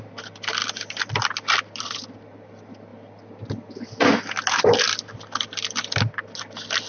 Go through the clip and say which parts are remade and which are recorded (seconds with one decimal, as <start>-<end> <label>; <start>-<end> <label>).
0.0-6.9 recorded